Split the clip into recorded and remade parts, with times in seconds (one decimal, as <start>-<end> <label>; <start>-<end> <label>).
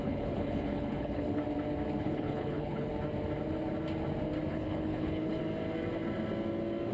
0.0-1.4 remade; 1.4-2.0 recorded; 2.0-2.9 remade; 2.9-4.5 recorded; 4.5-5.4 remade; 5.4-6.9 recorded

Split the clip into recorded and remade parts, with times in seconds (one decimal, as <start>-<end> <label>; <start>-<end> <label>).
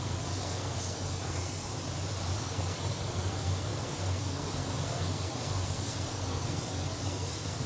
0.0-1.7 remade; 1.7-2.4 recorded; 2.4-7.7 remade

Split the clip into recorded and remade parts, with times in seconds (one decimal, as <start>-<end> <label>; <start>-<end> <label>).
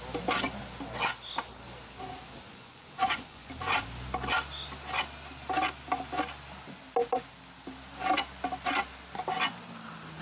0.0-2.5 recorded; 2.5-3.5 remade; 3.5-10.2 recorded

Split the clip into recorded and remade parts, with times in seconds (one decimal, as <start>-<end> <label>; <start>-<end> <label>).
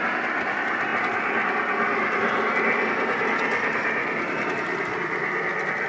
0.0-0.9 remade; 0.9-4.4 recorded; 4.4-5.9 remade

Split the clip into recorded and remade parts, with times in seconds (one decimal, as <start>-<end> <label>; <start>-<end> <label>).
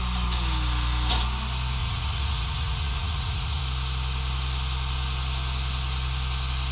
0.0-1.8 recorded; 1.8-3.6 remade; 3.6-6.7 recorded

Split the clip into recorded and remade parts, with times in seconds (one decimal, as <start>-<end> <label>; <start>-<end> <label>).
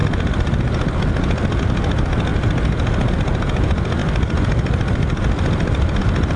0.0-4.0 recorded; 4.0-6.0 remade; 6.0-6.4 recorded